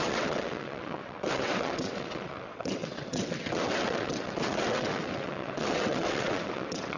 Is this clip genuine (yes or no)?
no